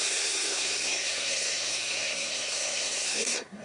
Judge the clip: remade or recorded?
remade